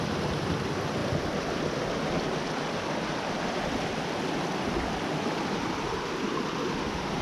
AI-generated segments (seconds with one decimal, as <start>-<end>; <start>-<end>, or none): none